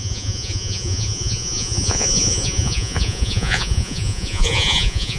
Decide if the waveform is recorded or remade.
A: remade